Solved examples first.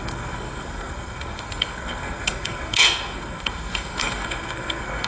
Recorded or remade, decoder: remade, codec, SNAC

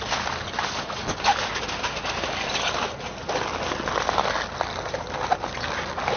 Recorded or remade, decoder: recorded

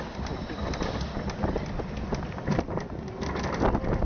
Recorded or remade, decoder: recorded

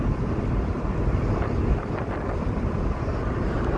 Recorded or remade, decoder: recorded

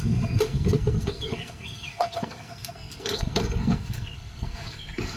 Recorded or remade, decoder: remade, codec, SNAC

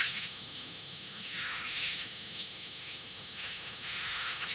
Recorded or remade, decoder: remade, autoencoder, DAC-VAE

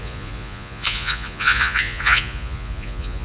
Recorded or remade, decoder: remade, vocoder, Vocos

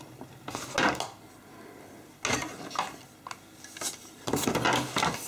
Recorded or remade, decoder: recorded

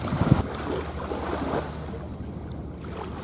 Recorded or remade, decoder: recorded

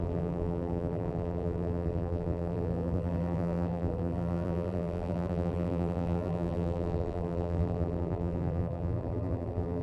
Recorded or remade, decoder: remade, vocoder, BigVGAN v2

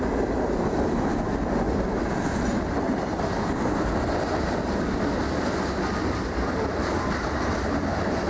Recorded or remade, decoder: recorded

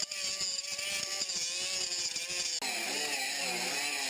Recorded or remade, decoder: recorded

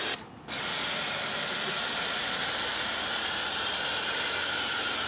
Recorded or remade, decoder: recorded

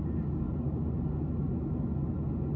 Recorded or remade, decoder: recorded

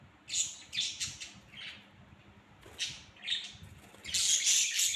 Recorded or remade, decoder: recorded